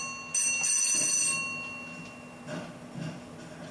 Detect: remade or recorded recorded